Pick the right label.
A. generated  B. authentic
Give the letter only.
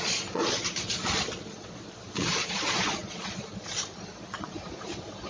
A